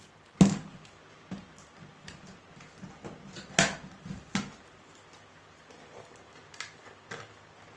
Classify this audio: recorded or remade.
recorded